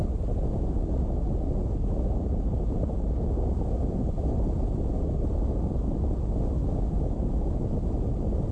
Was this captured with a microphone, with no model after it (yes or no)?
yes